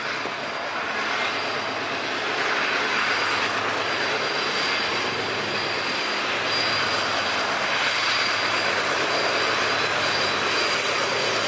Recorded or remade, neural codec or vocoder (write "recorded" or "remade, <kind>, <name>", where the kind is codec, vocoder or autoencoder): recorded